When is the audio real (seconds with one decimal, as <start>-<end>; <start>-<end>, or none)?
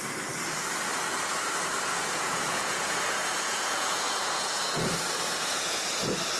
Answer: 0.0-1.9; 4.6-5.2; 6.0-6.4